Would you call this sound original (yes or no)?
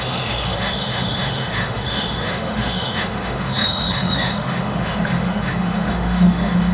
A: no